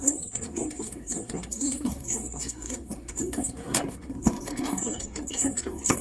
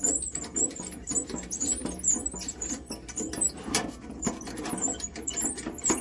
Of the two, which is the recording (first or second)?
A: second